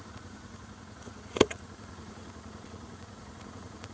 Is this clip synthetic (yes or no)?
yes